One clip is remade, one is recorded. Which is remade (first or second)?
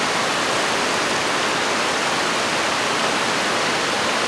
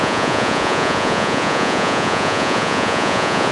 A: second